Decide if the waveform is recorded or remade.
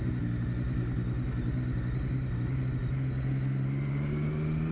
recorded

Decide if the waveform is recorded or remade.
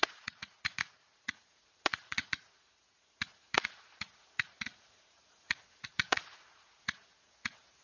remade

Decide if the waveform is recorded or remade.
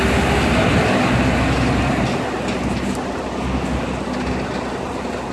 recorded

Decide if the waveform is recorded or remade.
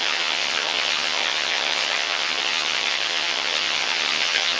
remade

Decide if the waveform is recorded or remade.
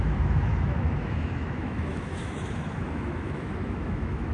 remade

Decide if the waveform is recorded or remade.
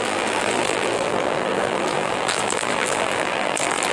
remade